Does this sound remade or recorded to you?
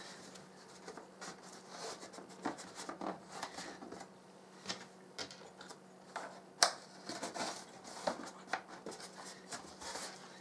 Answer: recorded